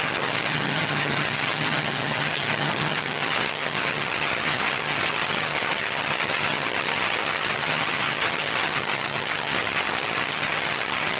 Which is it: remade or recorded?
remade